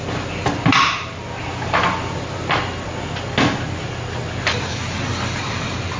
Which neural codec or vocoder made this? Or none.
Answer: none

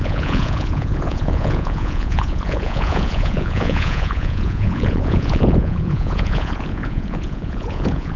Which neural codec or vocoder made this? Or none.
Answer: vocoder, Vocos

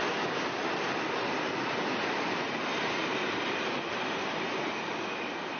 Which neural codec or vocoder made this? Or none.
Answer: none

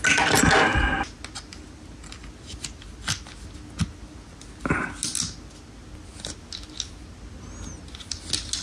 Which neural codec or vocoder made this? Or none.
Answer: none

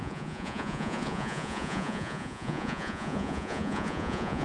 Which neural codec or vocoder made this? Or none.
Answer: vocoder, Vocos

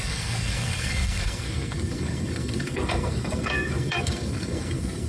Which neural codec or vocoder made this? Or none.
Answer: codec, SNAC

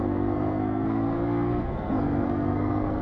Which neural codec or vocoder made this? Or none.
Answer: codec, SNAC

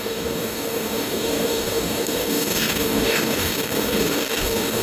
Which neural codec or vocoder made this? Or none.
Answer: codec, DAC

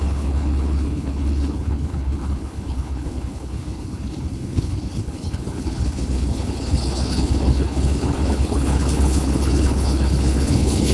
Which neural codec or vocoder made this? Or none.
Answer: codec, HILCodec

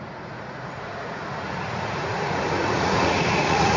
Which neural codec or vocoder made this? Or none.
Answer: vocoder, Vocos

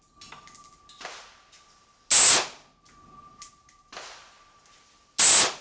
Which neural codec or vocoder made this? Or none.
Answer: none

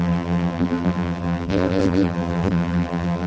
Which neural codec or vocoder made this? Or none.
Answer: vocoder, BigVGAN v2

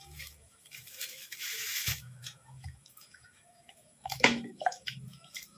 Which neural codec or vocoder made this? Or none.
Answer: autoencoder, DAC-VAE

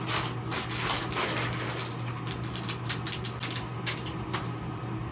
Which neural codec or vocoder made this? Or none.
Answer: none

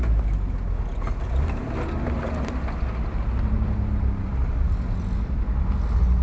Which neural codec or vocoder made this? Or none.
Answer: none